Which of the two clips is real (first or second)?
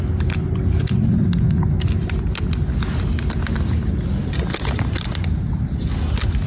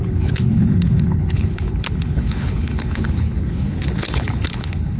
first